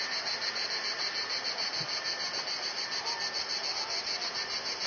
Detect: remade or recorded recorded